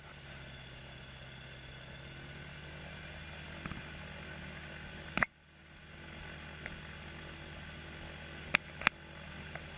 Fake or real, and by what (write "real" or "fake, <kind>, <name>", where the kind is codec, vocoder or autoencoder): real